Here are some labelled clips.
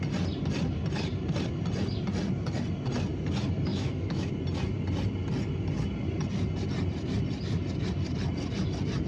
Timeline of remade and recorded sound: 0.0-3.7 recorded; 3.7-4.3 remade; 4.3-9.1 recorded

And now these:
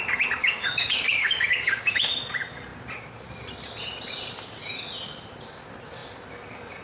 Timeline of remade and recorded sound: 0.0-0.4 recorded; 0.4-2.1 remade; 2.1-6.8 recorded